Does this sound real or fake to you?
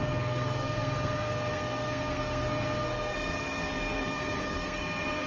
fake